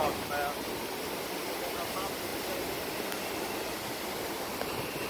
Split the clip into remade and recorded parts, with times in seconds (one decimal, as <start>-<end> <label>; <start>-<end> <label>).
0.0-5.1 recorded

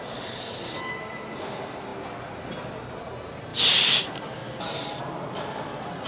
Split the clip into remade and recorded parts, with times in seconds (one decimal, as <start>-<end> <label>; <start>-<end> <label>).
0.0-3.5 recorded; 3.5-4.0 remade; 4.0-4.4 recorded; 4.4-5.0 remade; 5.0-6.1 recorded

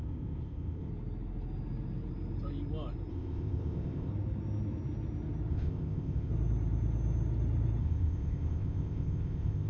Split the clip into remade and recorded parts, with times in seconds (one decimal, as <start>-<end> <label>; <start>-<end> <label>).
0.0-0.9 remade; 0.9-3.1 recorded; 3.1-4.1 remade; 4.1-5.5 recorded; 5.5-6.3 remade; 6.3-7.8 recorded; 7.8-9.7 remade

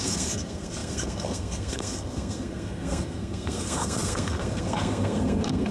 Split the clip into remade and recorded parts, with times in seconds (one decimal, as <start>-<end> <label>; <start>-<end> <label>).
0.0-5.7 remade